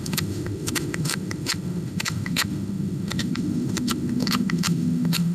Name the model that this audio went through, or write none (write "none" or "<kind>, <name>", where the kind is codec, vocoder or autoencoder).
autoencoder, DAC-VAE